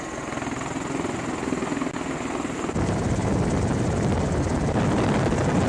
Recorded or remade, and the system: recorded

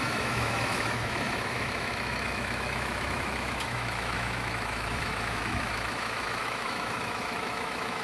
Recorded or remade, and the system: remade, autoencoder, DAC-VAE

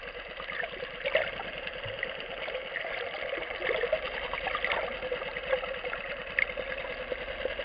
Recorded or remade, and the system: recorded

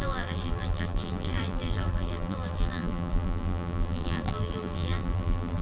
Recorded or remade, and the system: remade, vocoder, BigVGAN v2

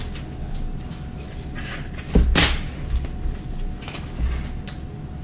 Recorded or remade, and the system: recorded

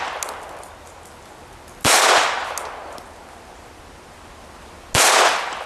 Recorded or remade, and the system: recorded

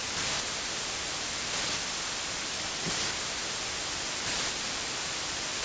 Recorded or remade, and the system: remade, vocoder, BigVGAN v2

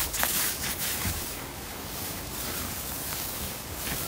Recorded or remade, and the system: remade, codec, DAC